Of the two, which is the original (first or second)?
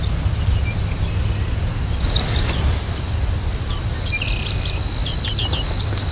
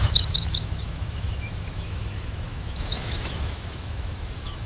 first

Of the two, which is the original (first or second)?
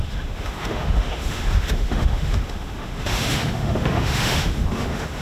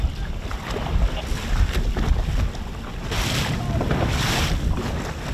second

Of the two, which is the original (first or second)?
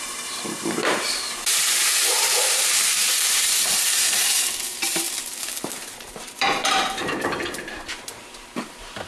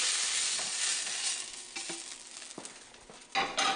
second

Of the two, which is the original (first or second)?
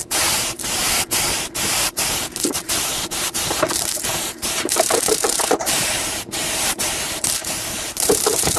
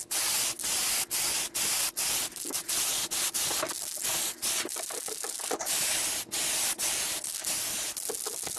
second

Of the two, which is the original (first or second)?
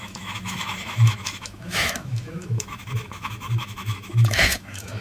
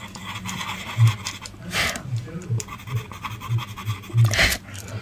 second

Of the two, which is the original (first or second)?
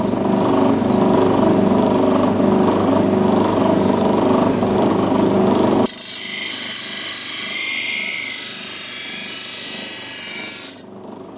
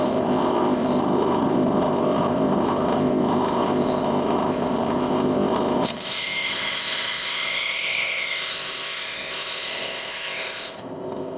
first